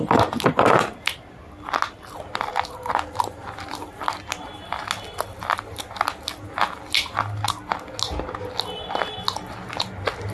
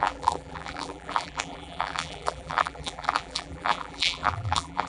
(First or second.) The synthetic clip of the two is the second